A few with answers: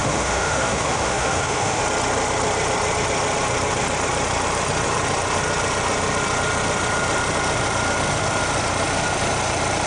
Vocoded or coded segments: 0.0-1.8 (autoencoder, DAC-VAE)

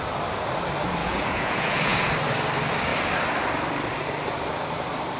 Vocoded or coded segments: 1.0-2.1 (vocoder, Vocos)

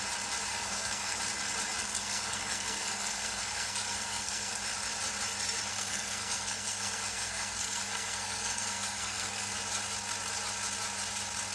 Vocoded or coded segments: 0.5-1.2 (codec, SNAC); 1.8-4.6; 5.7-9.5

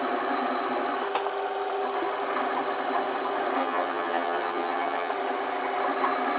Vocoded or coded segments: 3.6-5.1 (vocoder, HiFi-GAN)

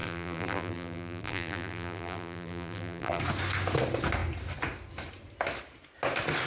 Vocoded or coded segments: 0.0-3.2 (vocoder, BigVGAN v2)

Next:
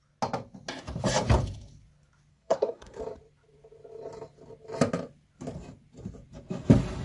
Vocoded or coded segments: 2.3-3.0 (codec, SNAC)

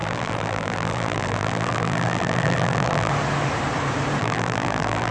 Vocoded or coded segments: 0.0-3.1 (vocoder, BigVGAN v2); 4.2-5.1